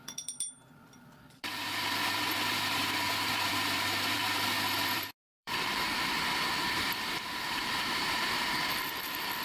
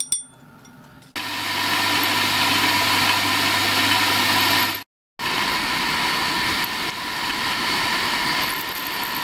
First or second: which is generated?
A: first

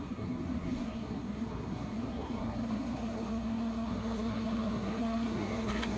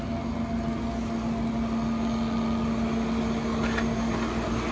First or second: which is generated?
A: first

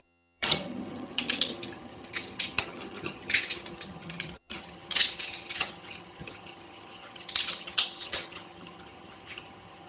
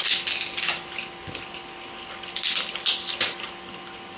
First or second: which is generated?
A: first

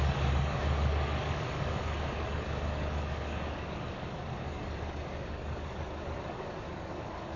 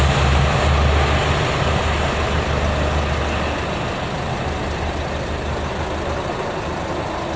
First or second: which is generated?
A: first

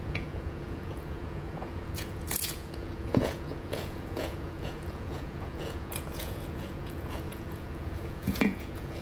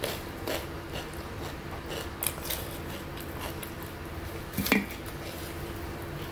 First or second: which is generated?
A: first